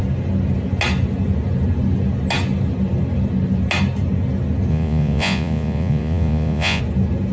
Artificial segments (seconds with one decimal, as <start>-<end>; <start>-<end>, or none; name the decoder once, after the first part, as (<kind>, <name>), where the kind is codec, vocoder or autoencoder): 4.7-6.8 (vocoder, Vocos)